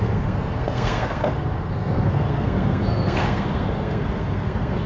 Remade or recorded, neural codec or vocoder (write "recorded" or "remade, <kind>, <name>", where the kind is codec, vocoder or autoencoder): remade, codec, SNAC